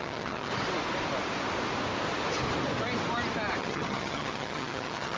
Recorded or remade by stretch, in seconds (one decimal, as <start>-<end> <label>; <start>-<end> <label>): 0.0-0.5 remade; 0.5-3.6 recorded; 3.6-5.2 remade